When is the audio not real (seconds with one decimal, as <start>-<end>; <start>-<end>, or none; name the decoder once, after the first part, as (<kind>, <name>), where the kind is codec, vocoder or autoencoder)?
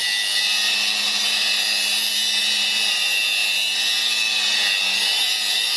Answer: none